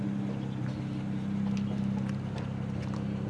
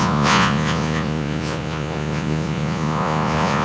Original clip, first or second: first